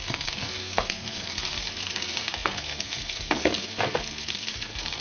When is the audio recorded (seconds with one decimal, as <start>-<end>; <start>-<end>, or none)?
none